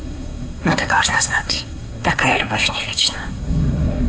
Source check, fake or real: fake